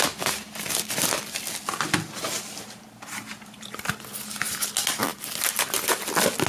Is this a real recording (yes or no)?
yes